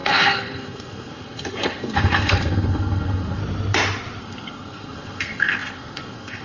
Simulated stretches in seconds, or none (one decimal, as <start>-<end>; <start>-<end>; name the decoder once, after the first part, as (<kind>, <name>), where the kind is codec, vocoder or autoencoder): 0.0-3.4 (codec, SNAC); 4.2-6.4